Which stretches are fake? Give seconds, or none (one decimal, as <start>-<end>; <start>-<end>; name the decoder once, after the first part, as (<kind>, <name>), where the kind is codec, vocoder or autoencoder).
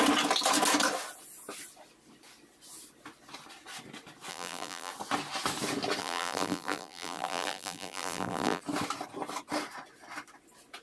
4.3-4.9 (vocoder, BigVGAN v2); 6.0-8.6